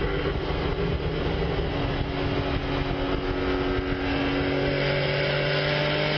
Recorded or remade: recorded